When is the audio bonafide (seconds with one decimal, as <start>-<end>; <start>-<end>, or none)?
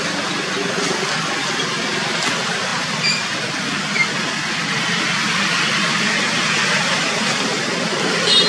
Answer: 0.0-8.5